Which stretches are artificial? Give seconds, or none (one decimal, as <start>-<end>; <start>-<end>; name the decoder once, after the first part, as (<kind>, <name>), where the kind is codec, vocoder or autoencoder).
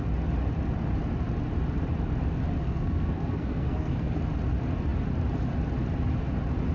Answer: 2.6-4.2 (codec, SNAC)